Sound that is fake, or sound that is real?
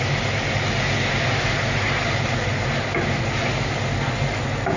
real